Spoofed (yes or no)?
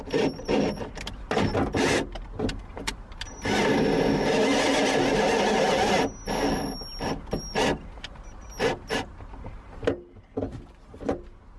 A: no